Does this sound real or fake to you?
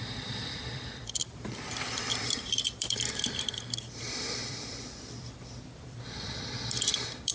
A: fake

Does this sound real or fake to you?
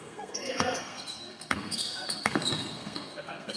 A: fake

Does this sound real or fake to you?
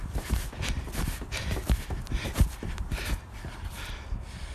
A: fake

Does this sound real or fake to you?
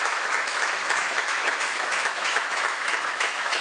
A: fake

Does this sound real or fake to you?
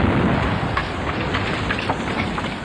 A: real